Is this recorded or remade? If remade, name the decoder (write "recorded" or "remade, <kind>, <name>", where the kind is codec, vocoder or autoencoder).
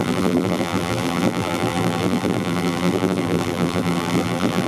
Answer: remade, vocoder, BigVGAN v2